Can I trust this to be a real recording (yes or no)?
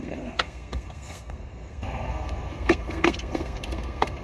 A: no